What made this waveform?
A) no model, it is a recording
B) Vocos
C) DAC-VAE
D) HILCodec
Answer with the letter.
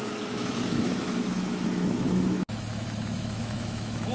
C